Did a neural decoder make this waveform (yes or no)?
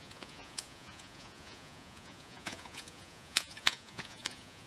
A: yes